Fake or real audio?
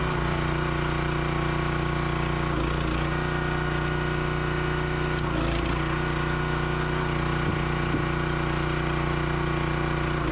real